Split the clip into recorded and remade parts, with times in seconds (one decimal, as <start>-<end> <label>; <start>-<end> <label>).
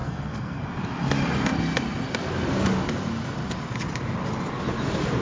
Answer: 0.0-0.7 remade; 0.7-5.2 recorded